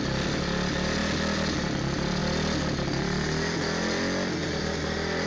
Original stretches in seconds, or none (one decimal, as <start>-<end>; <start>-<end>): 0.0-5.3